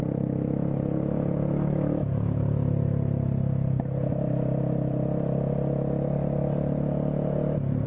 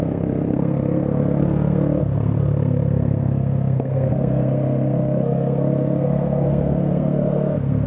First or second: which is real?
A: first